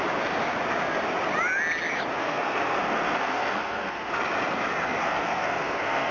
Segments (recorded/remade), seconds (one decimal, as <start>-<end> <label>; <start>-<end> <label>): 0.0-2.2 recorded; 2.2-4.1 remade; 4.1-5.0 recorded; 5.0-6.1 remade

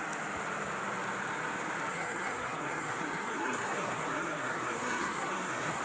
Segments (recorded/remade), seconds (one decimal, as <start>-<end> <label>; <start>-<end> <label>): 0.0-1.9 recorded; 1.9-5.8 remade

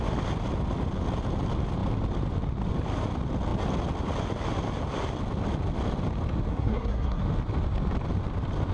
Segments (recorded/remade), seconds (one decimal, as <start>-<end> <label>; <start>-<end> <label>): 0.0-6.5 recorded; 6.5-7.2 remade; 7.2-8.7 recorded